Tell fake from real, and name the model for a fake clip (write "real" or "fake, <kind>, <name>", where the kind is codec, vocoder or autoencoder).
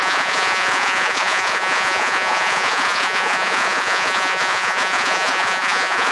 fake, vocoder, Vocos